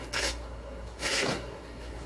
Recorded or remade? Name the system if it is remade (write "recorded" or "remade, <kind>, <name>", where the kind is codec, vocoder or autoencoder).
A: remade, codec, SNAC